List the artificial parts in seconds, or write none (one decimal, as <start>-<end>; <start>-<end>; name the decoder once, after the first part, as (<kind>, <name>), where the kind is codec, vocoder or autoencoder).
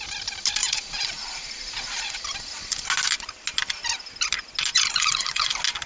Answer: 0.6-2.2 (vocoder, Vocos); 4.7-5.5